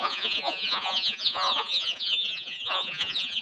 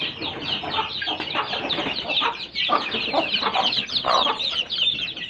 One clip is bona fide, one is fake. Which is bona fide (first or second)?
second